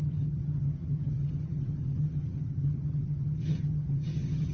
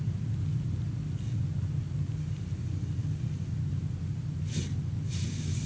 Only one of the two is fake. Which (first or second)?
first